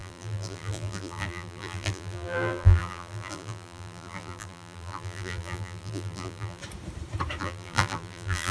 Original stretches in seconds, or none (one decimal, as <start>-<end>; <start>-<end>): 6.6-7.4